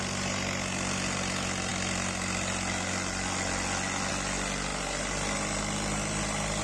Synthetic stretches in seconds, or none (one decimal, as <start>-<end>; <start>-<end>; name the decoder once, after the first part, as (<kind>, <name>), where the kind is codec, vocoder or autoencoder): none